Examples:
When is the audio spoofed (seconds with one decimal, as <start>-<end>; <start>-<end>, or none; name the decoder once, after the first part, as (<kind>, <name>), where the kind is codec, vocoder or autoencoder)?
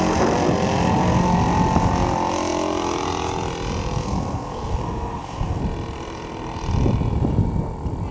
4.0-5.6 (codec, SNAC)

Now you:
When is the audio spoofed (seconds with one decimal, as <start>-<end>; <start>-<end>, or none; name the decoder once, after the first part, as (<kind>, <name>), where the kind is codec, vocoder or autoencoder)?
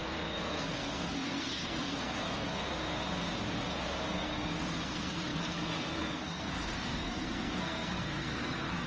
0.5-2.5 (codec, SNAC); 4.1-8.9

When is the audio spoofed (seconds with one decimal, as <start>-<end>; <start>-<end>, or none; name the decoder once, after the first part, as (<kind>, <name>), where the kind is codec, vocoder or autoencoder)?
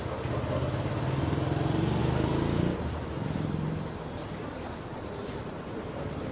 none